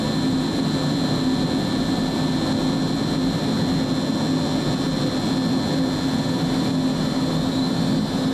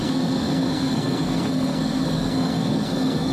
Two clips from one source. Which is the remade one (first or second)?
second